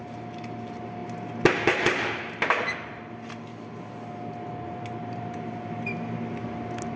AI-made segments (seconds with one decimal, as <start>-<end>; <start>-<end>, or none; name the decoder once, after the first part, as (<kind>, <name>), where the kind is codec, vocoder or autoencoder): none